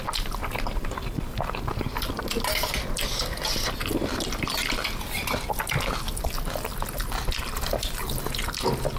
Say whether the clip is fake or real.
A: real